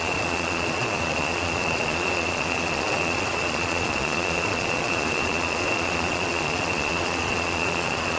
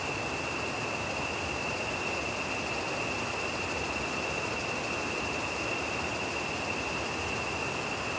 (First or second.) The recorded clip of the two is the second